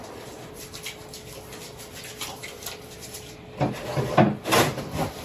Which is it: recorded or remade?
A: recorded